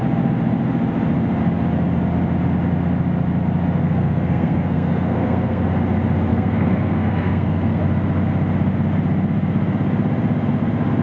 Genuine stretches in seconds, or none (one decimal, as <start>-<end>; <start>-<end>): 0.0-3.8; 5.6-6.3; 7.8-11.0